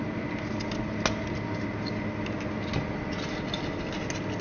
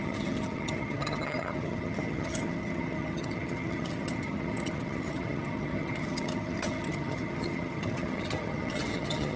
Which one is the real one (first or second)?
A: first